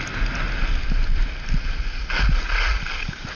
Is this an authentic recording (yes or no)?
yes